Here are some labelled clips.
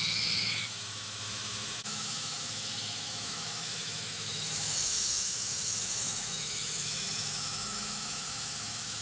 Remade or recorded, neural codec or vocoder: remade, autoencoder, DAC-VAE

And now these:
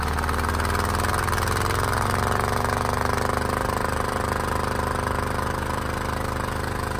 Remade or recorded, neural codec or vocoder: recorded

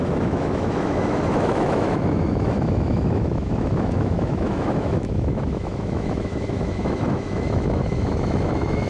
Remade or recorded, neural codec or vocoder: remade, autoencoder, DAC-VAE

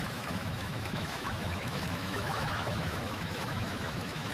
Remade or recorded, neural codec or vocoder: remade, autoencoder, DAC-VAE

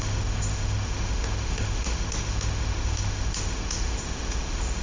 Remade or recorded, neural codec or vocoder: remade, autoencoder, DAC-VAE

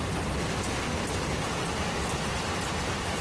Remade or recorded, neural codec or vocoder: recorded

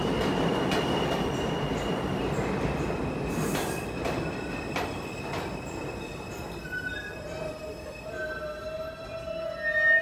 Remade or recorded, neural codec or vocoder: recorded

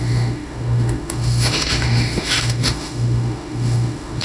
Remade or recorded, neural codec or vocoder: remade, autoencoder, DAC-VAE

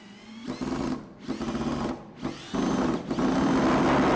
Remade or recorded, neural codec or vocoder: recorded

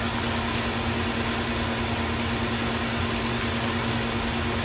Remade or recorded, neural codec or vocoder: recorded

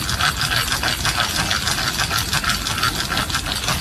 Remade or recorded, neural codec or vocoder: recorded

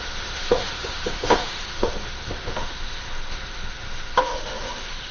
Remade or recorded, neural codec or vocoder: remade, autoencoder, DAC-VAE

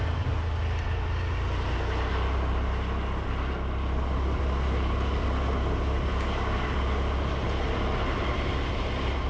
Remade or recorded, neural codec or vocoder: recorded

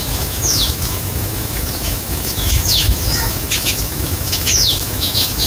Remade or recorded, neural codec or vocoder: remade, autoencoder, DAC-VAE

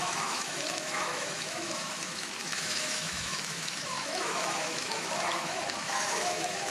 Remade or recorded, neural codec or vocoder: remade, autoencoder, DAC-VAE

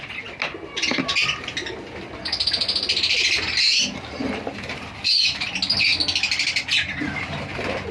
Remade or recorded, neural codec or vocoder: recorded